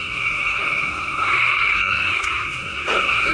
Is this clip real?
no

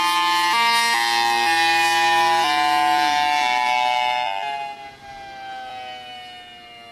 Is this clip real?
yes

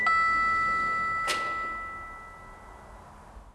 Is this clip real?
yes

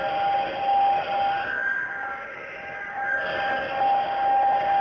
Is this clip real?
yes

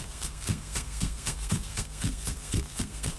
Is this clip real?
no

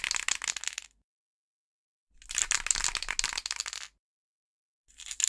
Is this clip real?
yes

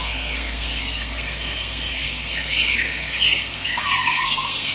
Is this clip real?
no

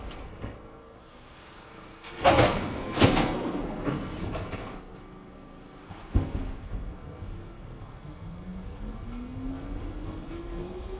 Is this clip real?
no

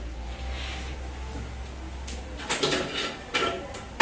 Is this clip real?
yes